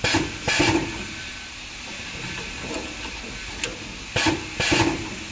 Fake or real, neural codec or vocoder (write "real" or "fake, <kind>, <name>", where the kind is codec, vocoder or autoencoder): real